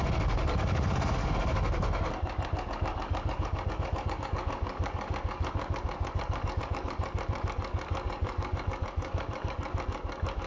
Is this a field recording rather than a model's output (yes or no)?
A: no